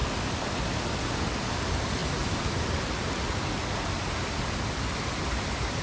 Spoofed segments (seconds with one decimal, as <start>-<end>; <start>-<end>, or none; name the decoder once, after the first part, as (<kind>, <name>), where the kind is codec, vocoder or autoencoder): 0.0-1.0 (vocoder, BigVGAN v2)